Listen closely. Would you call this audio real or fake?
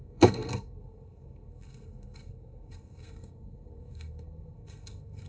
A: fake